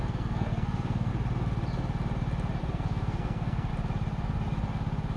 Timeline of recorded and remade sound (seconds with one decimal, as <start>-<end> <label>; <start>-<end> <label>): 0.0-1.1 remade; 1.1-2.6 recorded; 2.6-3.7 remade; 3.7-5.2 recorded